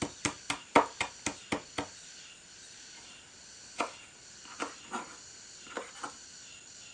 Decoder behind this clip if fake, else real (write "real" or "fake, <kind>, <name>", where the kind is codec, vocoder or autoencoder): real